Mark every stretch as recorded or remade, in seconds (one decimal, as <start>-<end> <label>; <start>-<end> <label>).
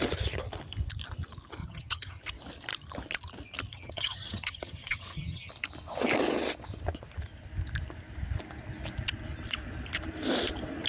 0.0-1.6 recorded; 1.6-2.2 remade; 2.2-3.7 recorded; 3.7-5.5 remade; 5.5-10.9 recorded